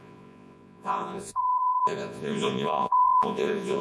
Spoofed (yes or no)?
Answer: yes